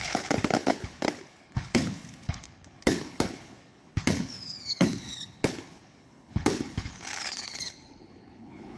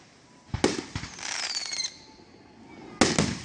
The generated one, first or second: first